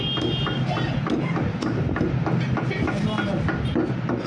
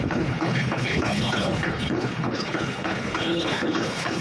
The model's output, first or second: second